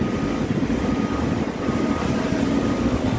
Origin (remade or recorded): recorded